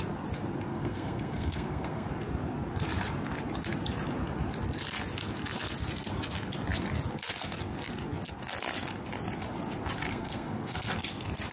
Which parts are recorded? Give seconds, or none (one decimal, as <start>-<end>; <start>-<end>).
0.0-0.7; 2.1-10.1; 10.9-11.5